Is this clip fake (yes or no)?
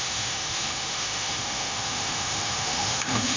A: yes